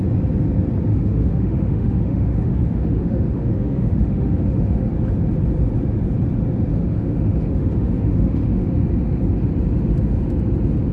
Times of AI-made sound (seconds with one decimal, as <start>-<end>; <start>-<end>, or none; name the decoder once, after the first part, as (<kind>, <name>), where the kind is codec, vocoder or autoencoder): 0.9-4.9 (autoencoder, DAC-VAE); 6.7-8.7